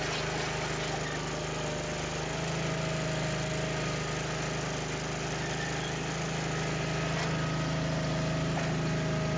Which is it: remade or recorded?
recorded